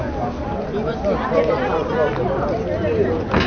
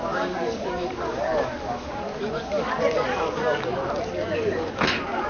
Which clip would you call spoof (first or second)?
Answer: second